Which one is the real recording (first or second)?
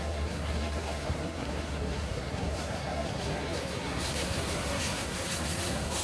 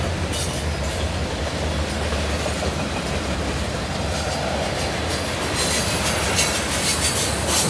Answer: second